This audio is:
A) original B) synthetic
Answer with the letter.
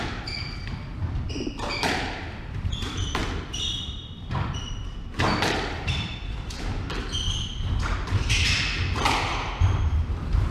B